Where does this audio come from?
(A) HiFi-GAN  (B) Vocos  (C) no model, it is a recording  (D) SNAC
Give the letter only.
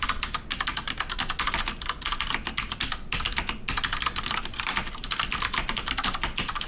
C